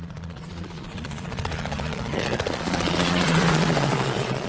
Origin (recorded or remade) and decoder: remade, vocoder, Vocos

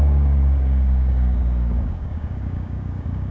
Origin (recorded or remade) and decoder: remade, codec, DAC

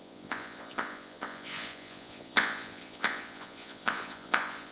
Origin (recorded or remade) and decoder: remade, vocoder, Vocos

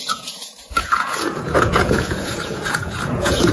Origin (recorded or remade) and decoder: remade, vocoder, Vocos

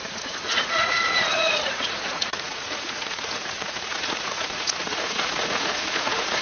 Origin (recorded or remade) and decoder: remade, vocoder, Vocos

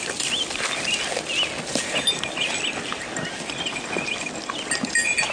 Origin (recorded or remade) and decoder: recorded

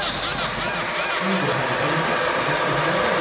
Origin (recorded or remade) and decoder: recorded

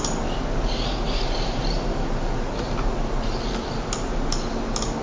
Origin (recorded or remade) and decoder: recorded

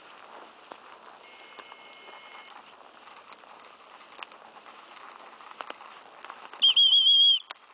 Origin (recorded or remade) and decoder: recorded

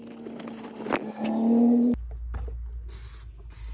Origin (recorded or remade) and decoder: recorded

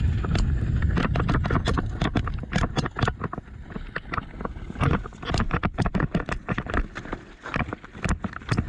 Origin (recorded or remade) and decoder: remade, vocoder, BigVGAN v2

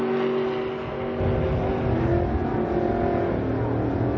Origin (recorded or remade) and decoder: recorded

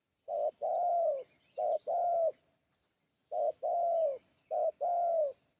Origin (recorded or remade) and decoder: recorded